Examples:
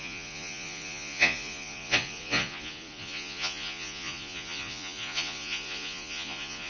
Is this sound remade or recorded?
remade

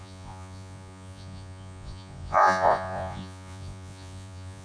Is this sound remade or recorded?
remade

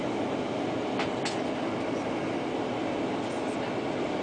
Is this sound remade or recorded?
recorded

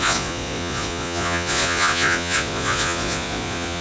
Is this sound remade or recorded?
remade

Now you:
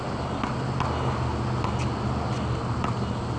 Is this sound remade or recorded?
recorded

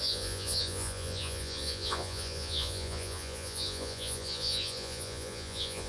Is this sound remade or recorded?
remade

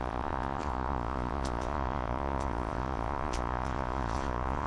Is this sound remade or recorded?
remade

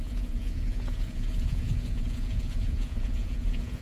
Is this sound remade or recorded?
remade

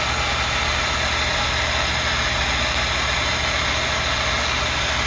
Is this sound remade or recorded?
recorded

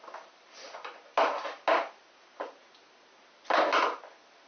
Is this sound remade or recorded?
recorded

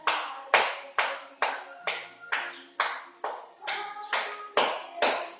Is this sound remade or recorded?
recorded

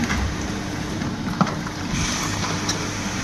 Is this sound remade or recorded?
recorded